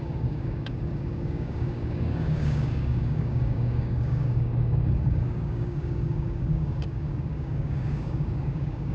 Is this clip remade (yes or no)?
yes